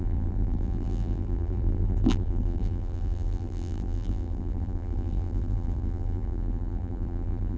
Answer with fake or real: fake